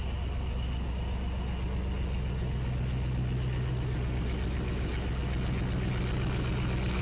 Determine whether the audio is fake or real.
real